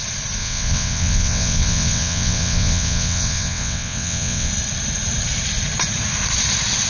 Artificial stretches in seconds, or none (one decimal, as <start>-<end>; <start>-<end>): 0.4-4.5